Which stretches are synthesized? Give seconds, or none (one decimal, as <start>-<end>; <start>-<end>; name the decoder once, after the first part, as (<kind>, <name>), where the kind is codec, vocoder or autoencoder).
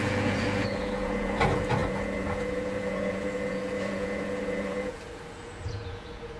0.0-6.4 (vocoder, Vocos)